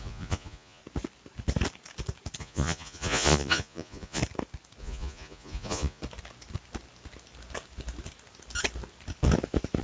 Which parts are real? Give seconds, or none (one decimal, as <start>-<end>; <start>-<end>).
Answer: 0.8-2.4; 4.2-4.8; 6.0-9.8